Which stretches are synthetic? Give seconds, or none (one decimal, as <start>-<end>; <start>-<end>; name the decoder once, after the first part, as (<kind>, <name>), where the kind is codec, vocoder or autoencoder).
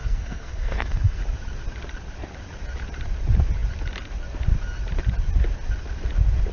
0.0-1.2 (codec, SNAC)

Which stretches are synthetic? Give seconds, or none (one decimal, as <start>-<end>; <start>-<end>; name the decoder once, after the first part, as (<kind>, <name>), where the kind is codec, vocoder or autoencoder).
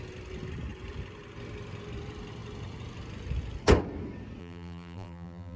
4.4-5.6 (vocoder, BigVGAN v2)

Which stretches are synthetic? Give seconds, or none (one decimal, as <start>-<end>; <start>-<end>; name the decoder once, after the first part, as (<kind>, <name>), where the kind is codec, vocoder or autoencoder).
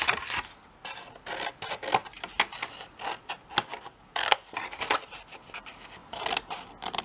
none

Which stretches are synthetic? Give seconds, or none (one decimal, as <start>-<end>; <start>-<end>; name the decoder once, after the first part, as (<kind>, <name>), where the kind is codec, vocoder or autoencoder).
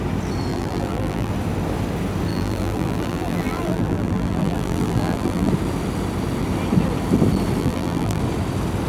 0.5-1.3 (vocoder, BigVGAN v2); 2.3-5.5; 7.6-8.2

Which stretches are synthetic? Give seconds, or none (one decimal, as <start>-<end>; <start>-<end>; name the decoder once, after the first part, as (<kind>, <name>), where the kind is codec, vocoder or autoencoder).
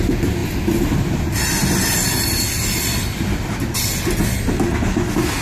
none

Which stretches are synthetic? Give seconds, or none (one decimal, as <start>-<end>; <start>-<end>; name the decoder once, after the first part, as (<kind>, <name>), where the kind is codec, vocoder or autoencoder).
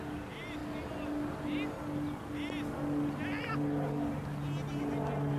none